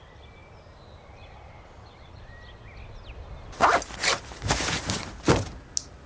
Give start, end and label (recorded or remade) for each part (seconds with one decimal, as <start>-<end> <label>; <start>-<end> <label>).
0.0-6.1 recorded